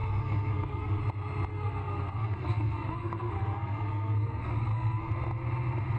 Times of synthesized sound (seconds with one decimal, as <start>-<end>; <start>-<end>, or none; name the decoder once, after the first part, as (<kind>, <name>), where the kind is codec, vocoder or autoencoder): 0.0-1.0 (codec, SNAC); 1.5-5.1